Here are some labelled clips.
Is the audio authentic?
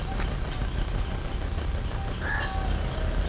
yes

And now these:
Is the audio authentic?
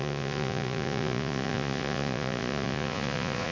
no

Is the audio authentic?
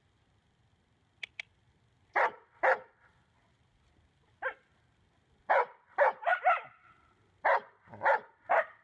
yes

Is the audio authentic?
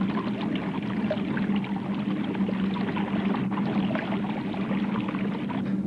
yes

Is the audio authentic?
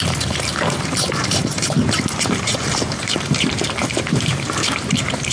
no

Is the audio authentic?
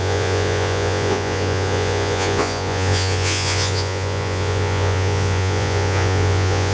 no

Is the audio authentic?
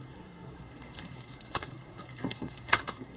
no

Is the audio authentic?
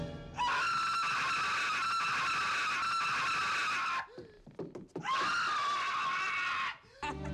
yes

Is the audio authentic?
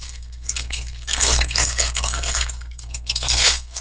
no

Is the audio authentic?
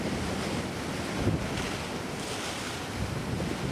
yes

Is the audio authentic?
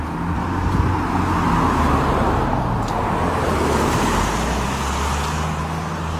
yes